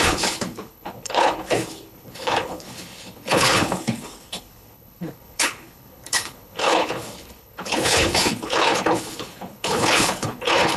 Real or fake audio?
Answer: fake